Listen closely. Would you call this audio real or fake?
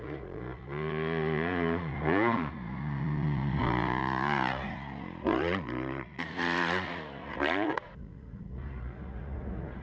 fake